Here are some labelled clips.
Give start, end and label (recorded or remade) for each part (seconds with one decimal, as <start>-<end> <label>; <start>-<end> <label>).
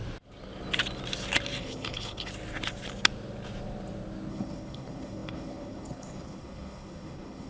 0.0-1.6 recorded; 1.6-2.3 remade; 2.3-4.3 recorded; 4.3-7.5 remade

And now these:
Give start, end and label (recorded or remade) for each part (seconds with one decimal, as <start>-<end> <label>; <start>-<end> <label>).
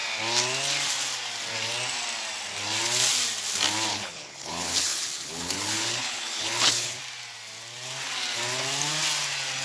0.0-3.9 recorded; 3.9-7.0 remade; 7.0-9.6 recorded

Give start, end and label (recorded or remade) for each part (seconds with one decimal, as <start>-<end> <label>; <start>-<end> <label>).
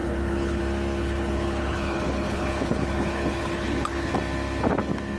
0.0-0.6 remade; 0.6-1.0 recorded; 1.0-4.1 remade; 4.1-5.2 recorded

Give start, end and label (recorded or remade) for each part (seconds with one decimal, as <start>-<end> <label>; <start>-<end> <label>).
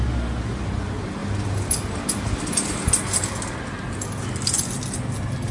0.0-5.5 recorded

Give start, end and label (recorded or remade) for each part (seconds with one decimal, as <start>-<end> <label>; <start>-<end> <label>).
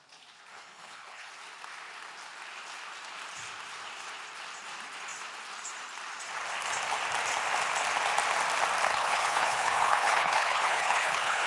0.0-0.5 recorded; 0.5-1.3 remade; 1.3-8.9 recorded; 8.9-11.5 remade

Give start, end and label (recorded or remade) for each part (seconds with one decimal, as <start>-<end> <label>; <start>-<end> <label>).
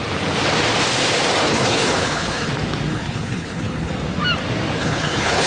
0.0-1.4 recorded; 1.4-2.5 remade; 2.5-2.9 recorded; 2.9-3.9 remade; 3.9-4.8 recorded; 4.8-5.5 remade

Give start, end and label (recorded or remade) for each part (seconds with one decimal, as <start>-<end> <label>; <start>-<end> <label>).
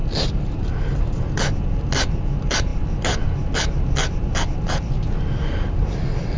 0.0-6.4 recorded